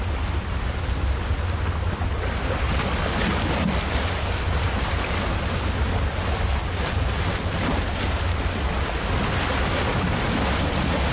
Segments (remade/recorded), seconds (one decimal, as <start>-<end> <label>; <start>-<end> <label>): 0.0-11.1 recorded